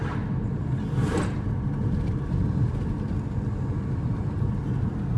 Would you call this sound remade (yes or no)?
no